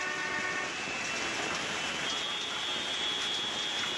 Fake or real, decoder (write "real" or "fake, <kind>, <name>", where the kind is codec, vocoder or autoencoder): real